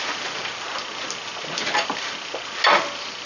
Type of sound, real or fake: real